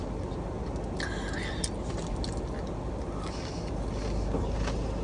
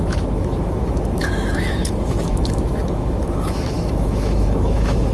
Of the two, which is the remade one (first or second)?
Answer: second